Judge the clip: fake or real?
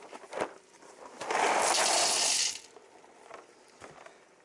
real